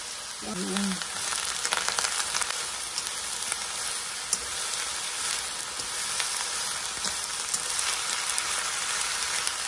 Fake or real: real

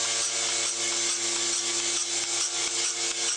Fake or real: real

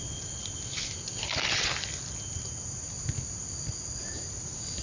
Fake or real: real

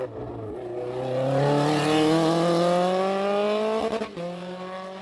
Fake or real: real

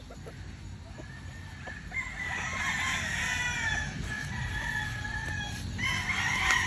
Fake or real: real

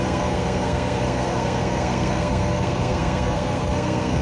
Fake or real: fake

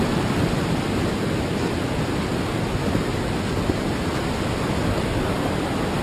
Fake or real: real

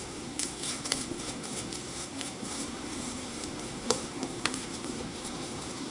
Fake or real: fake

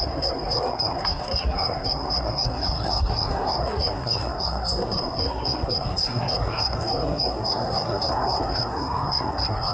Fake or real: fake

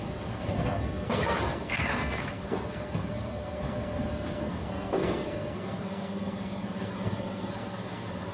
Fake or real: fake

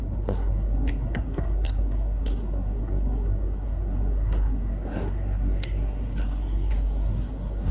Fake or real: fake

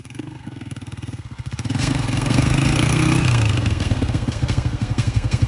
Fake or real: fake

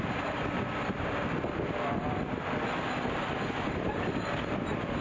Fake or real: real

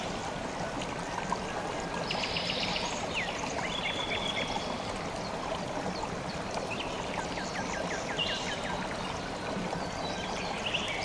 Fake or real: real